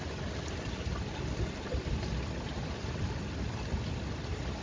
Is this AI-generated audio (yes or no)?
no